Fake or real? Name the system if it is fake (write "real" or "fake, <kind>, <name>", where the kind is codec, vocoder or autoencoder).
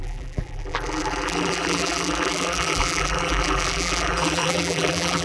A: fake, vocoder, BigVGAN v2